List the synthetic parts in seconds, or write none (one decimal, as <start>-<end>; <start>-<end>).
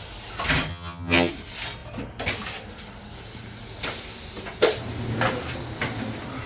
0.7-1.3